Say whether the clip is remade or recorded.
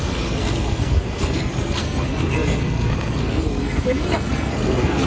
remade